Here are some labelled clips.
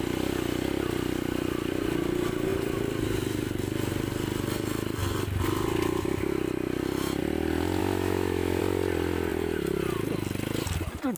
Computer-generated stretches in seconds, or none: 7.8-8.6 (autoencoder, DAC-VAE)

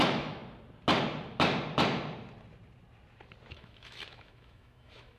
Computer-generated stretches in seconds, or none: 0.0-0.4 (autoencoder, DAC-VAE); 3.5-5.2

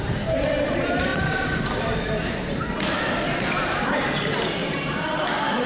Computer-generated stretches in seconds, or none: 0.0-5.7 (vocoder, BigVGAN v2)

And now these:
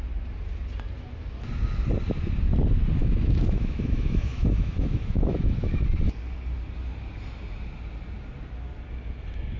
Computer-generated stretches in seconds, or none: 3.0-5.7 (autoencoder, DAC-VAE)

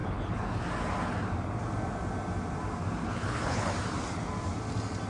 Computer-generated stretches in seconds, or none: 0.0-0.6 (codec, HILCodec); 3.0-3.7

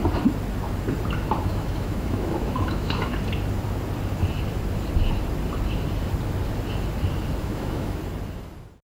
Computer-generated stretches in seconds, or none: 1.4-3.1 (autoencoder, DAC-VAE); 7.4-8.0

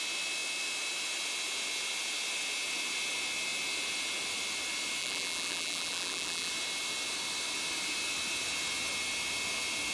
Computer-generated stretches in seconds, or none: 5.0-6.5 (vocoder, BigVGAN v2)